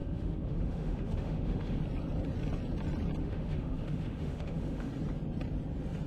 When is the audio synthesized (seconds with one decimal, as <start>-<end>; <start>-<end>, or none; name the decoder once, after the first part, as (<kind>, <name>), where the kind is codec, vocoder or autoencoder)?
0.0-1.8 (autoencoder, DAC-VAE); 3.2-4.9